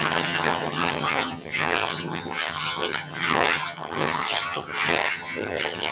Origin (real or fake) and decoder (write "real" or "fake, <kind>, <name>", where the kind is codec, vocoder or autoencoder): fake, vocoder, HiFi-GAN